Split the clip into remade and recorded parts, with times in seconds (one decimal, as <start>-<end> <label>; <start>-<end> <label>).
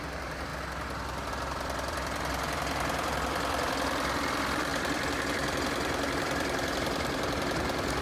0.0-0.5 remade; 0.5-1.3 recorded; 1.3-8.0 remade